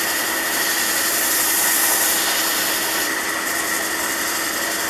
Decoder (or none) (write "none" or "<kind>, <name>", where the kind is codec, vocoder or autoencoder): none